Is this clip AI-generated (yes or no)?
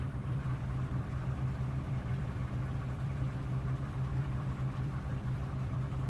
yes